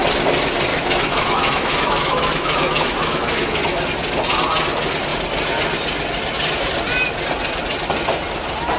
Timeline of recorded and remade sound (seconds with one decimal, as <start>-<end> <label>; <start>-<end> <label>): 0.0-0.7 recorded; 0.7-3.8 remade; 3.8-8.8 recorded